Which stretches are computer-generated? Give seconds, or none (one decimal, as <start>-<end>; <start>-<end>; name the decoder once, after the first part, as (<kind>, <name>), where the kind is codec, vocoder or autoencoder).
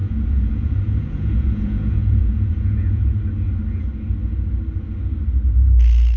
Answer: 0.0-3.2 (vocoder, Vocos)